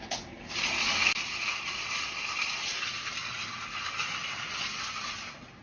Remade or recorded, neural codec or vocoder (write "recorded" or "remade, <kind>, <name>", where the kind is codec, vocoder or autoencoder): recorded